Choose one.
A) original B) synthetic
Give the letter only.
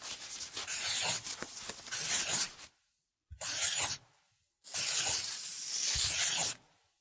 A